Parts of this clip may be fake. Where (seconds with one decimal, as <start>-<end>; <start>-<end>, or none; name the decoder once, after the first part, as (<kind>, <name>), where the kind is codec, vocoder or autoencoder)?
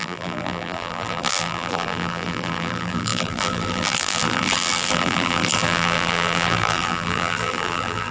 0.0-8.1 (vocoder, BigVGAN v2)